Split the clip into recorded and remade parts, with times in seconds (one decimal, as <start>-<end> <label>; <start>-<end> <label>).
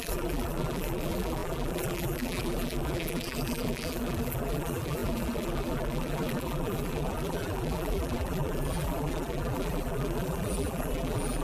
0.0-11.4 remade